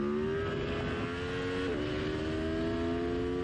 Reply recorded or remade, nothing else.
recorded